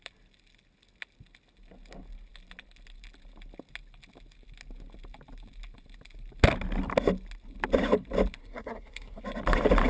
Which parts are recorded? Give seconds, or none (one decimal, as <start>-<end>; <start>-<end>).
0.0-8.4; 9.2-9.9